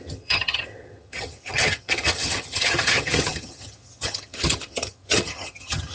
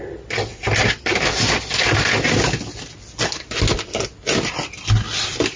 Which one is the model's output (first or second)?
first